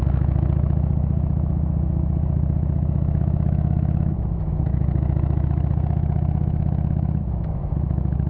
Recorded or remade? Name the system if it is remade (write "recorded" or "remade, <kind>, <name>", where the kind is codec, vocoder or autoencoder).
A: remade, autoencoder, DAC-VAE